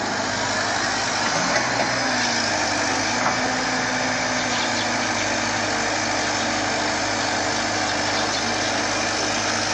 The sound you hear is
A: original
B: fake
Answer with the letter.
A